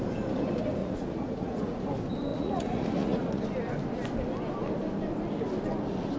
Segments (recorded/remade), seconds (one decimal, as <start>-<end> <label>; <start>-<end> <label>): 0.0-0.8 recorded; 0.8-1.8 remade; 1.8-2.3 recorded; 2.3-3.4 remade; 3.4-6.2 recorded